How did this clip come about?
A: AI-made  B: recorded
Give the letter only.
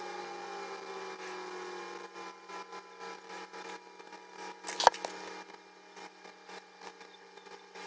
B